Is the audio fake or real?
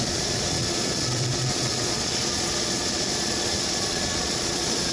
fake